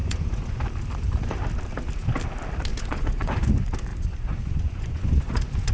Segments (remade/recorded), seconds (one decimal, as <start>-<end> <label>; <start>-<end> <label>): 0.0-0.6 remade; 0.6-2.7 recorded; 2.7-3.5 remade; 3.5-3.9 recorded; 3.9-5.7 remade